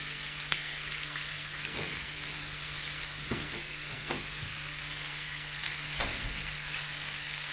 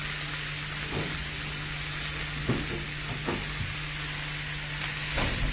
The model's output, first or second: first